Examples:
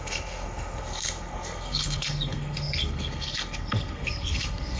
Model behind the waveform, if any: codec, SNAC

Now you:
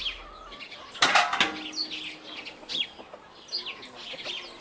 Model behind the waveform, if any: none